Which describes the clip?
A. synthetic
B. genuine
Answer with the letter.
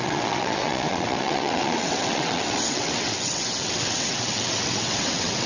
A